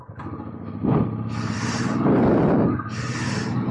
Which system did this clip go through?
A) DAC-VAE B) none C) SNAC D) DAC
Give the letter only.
B